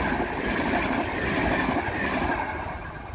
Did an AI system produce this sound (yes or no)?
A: no